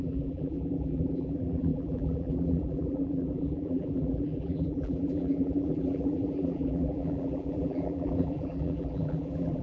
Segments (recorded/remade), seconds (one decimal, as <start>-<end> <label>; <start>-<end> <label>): 0.0-9.6 remade